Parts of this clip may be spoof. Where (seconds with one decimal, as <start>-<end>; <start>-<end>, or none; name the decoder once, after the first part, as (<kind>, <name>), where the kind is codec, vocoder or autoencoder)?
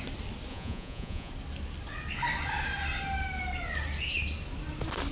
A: 0.5-1.3 (vocoder, Vocos)